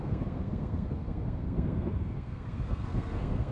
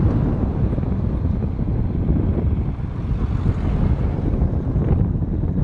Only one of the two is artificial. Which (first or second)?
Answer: first